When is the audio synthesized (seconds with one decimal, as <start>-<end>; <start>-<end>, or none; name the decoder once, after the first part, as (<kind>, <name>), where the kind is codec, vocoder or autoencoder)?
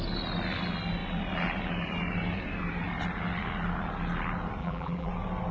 4.6-5.1 (vocoder, BigVGAN v2)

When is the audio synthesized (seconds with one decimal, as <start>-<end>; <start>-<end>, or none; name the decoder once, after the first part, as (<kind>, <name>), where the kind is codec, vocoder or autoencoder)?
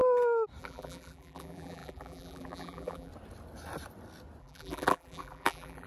0.6-3.1 (vocoder, BigVGAN v2); 4.4-5.9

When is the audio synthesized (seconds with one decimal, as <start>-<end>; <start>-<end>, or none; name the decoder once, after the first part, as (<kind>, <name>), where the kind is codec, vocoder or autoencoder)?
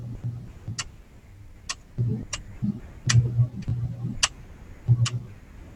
0.0-0.7 (vocoder, BigVGAN v2)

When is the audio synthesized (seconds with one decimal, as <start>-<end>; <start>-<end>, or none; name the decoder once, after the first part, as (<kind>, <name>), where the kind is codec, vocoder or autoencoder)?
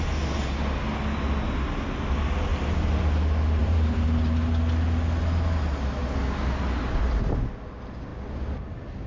2.5-3.0 (vocoder, BigVGAN v2); 3.6-4.5